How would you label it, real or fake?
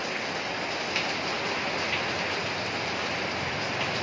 real